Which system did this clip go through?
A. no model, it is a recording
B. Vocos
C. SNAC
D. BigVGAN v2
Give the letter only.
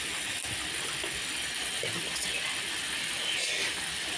A